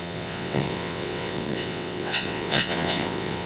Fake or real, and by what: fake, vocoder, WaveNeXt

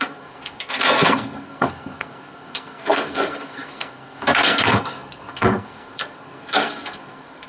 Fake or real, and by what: fake, codec, SNAC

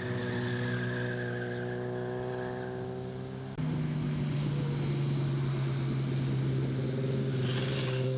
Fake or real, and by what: real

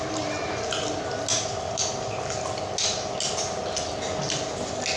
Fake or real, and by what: real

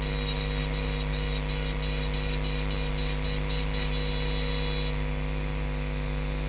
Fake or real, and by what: real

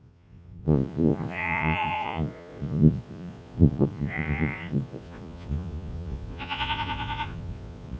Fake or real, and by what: fake, vocoder, Vocos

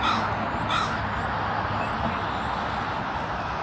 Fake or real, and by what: real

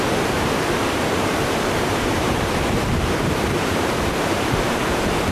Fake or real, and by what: fake, vocoder, BigVGAN v2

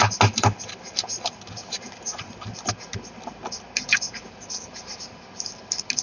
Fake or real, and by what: real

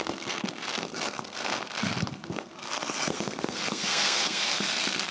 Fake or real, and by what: fake, codec, SNAC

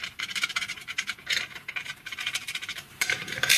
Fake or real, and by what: fake, vocoder, BigVGAN v2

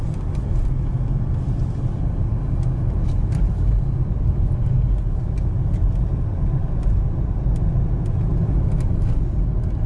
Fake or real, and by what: real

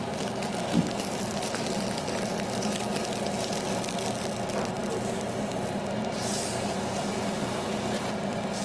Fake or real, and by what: real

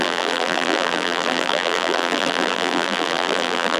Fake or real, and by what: fake, vocoder, BigVGAN v2